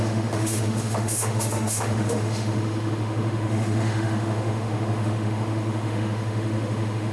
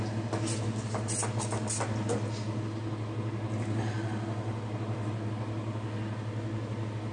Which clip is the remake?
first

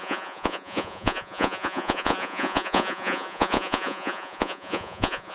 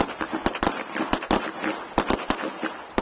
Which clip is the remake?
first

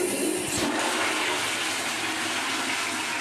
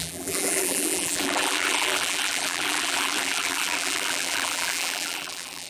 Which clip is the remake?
second